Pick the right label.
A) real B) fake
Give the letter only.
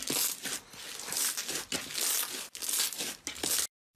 A